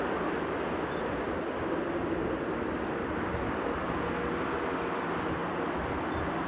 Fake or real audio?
real